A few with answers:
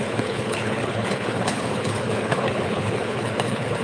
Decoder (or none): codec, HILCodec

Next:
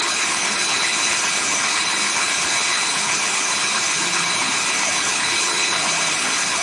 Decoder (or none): codec, HILCodec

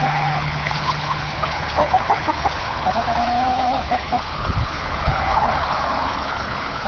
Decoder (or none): codec, HILCodec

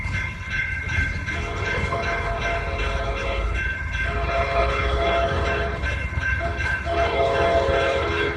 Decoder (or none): codec, HILCodec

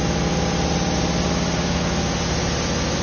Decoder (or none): none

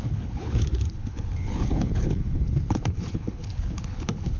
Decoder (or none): codec, HILCodec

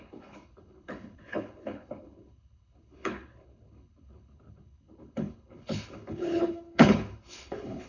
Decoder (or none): codec, HILCodec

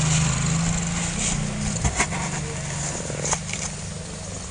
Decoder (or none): none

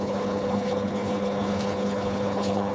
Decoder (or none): codec, HILCodec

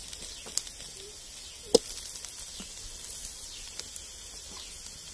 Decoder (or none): none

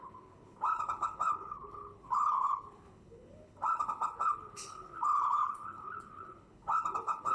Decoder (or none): codec, HILCodec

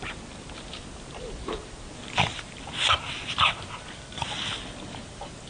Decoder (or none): none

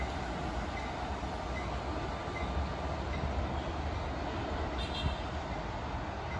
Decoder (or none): none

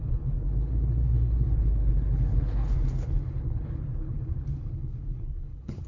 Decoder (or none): codec, HILCodec